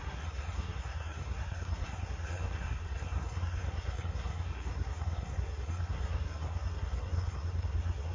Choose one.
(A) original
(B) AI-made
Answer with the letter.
B